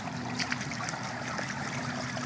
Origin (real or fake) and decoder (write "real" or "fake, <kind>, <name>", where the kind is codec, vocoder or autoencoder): real